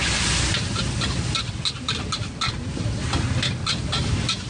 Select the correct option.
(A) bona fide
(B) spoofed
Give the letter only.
A